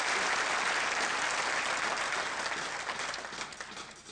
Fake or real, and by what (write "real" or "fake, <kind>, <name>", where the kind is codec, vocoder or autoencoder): real